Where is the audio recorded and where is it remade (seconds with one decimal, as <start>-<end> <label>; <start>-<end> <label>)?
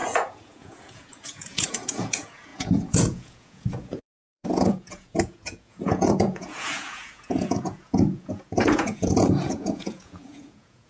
0.0-10.9 remade